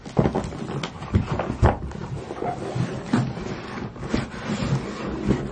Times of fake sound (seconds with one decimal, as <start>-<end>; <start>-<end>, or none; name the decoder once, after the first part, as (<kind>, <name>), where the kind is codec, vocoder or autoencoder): none